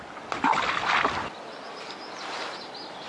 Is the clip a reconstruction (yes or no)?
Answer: no